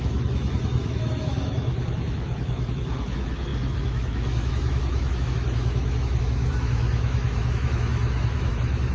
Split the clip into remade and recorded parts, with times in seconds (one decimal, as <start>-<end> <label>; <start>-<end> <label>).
0.0-8.9 remade